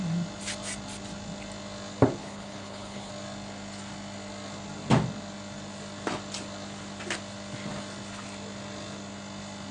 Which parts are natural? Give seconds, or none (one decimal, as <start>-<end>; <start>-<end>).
0.0-2.2; 3.1-9.7